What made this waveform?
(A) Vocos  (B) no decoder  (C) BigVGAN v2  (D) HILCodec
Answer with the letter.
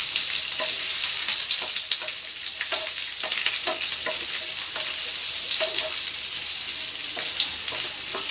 B